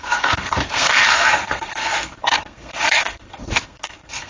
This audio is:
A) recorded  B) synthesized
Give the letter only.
B